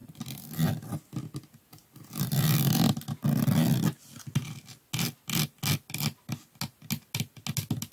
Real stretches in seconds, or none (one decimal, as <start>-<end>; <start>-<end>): 0.9-1.8; 3.0-7.9

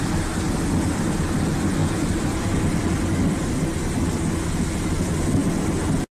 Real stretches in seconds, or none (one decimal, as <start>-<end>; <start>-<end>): 0.0-6.1